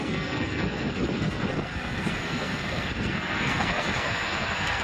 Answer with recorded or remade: remade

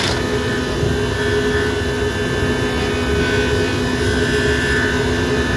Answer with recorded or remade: recorded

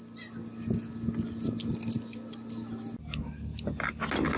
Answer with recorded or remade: recorded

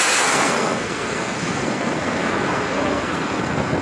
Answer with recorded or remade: remade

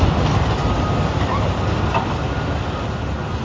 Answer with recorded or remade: recorded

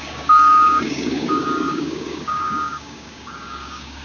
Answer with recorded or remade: remade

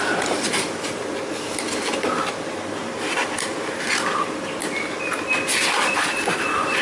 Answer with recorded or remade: recorded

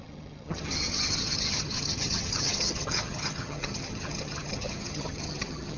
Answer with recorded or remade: remade